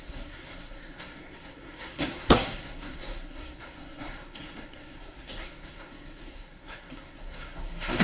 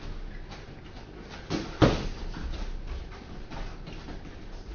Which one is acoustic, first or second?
second